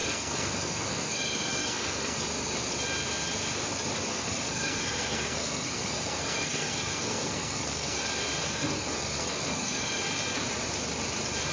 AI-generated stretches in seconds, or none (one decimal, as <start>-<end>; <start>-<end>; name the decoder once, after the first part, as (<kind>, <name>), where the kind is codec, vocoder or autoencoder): 0.0-2.2 (codec, SNAC); 4.1-8.0; 8.4-10.0